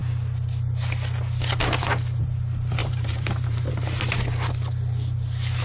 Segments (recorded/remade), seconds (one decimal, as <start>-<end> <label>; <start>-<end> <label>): 0.0-2.8 recorded; 2.8-3.7 remade; 3.7-5.6 recorded